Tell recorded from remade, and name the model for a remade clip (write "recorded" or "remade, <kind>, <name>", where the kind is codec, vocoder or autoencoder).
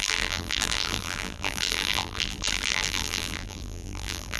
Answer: remade, vocoder, BigVGAN v2